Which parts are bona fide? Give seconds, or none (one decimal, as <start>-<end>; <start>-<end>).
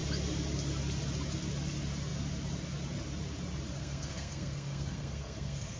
0.0-3.8